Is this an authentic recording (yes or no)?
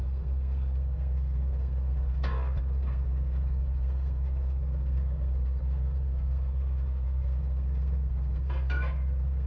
no